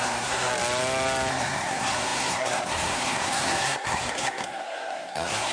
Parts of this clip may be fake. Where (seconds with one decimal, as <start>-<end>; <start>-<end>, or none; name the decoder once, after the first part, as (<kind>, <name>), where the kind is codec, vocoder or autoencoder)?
0.0-0.5 (codec, SNAC); 1.3-5.5